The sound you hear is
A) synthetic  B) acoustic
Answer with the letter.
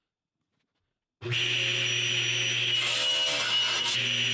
B